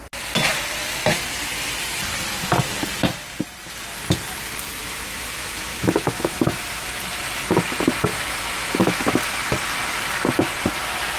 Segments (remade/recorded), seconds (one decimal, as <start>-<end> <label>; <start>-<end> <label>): 0.0-4.8 recorded; 4.8-6.8 remade; 6.8-8.1 recorded; 8.1-9.2 remade; 9.2-11.2 recorded